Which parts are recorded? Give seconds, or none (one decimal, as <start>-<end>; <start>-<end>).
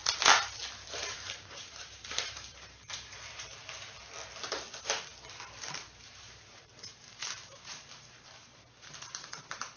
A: 0.0-0.9; 3.6-5.6